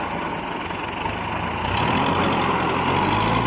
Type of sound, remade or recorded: recorded